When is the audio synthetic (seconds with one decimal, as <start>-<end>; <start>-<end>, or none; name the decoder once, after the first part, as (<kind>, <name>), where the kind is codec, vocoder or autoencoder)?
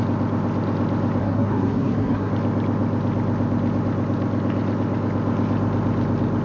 1.2-2.3 (codec, SNAC)